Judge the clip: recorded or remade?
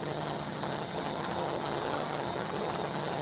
remade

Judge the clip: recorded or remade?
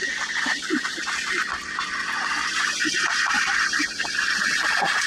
recorded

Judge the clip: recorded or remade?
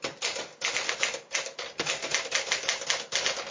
recorded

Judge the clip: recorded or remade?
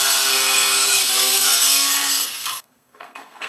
remade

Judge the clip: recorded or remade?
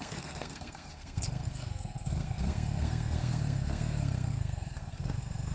remade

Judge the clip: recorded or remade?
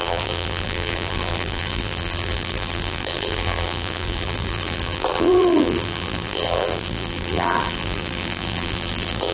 remade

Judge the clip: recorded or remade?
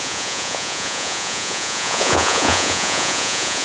remade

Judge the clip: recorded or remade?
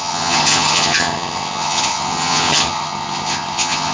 remade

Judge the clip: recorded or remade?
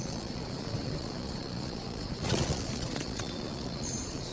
remade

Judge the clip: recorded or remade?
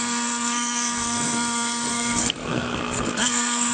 remade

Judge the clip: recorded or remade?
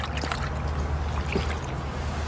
recorded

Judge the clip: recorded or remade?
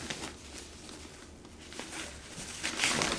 recorded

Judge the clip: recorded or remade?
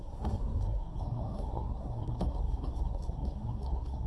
remade